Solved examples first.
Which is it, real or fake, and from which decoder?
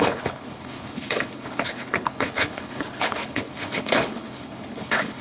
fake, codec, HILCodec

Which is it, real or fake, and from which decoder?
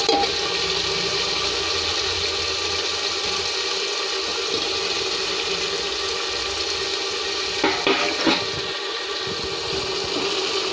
real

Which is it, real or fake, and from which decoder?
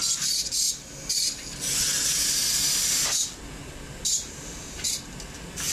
real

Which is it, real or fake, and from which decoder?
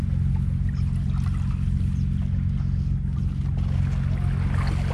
real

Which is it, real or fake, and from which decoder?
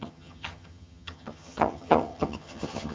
fake, vocoder, HiFi-GAN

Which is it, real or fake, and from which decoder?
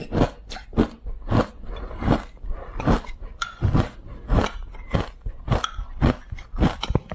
real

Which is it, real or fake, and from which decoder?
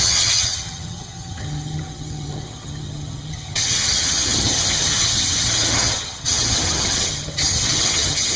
fake, vocoder, HiFi-GAN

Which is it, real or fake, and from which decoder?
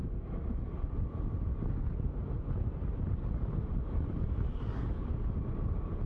real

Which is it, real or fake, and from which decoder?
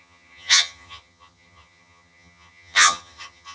fake, vocoder, HiFi-GAN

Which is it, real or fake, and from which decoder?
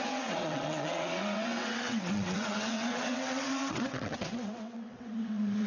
fake, vocoder, WaveNeXt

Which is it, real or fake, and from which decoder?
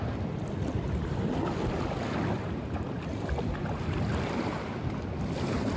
real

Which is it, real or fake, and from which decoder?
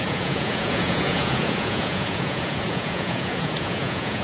fake, vocoder, Vocos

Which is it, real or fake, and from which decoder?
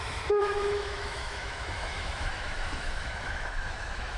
fake, autoencoder, DAC-VAE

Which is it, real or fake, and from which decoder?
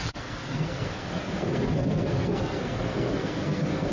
fake, codec, SNAC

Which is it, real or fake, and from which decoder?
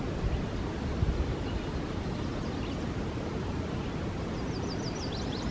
real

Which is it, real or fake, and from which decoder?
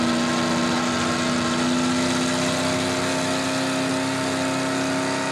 real